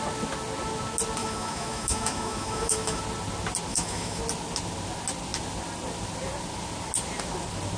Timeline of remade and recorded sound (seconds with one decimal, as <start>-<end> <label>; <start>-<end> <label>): 0.0-1.2 recorded; 1.2-3.0 remade; 3.0-3.7 recorded; 3.7-4.2 remade; 4.2-7.8 recorded